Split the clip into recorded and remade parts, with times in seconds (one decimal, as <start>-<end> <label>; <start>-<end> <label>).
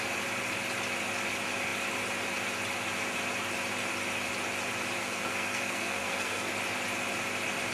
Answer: 0.0-5.0 recorded; 5.0-6.5 remade; 6.5-7.7 recorded